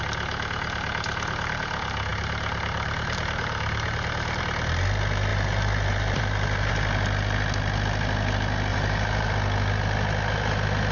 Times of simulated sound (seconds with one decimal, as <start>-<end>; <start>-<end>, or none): 2.1-4.4; 5.3-6.7; 8.7-9.3